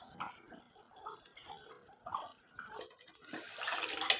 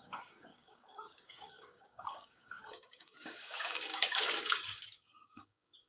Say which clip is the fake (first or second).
second